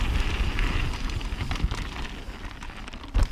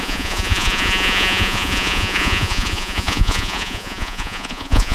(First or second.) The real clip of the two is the first